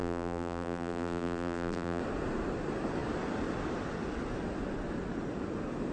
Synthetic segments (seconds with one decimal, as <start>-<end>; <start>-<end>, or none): 0.0-2.0